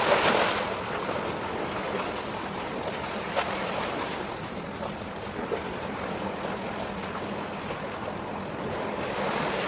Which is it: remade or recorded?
recorded